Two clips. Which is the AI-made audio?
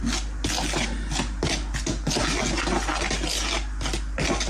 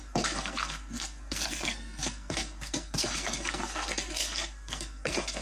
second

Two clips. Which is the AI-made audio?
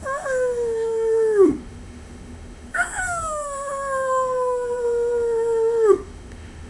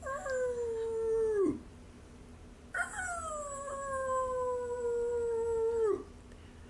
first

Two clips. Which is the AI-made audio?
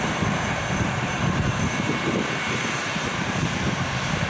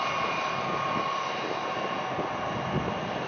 first